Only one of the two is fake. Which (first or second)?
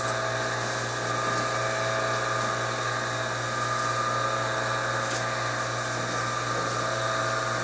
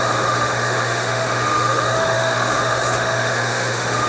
second